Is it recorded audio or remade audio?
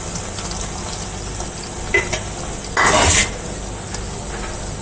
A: recorded